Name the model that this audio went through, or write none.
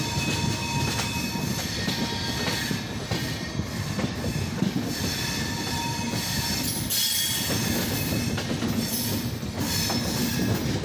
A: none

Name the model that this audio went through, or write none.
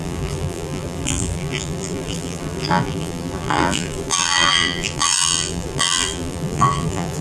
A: vocoder, BigVGAN v2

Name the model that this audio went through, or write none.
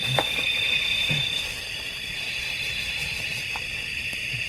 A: vocoder, BigVGAN v2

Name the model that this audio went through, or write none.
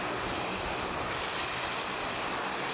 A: none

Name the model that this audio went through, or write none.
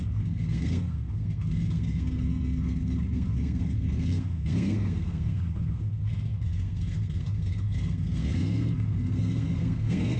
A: codec, SNAC